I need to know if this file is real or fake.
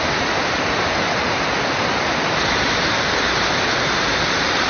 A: real